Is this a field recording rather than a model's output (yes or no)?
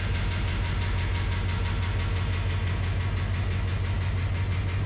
yes